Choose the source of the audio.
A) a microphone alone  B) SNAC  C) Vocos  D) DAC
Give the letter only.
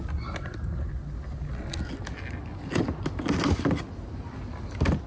A